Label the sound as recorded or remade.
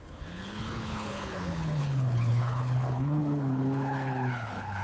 remade